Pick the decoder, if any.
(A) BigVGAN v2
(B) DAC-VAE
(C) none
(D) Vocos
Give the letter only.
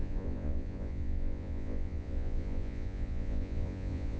D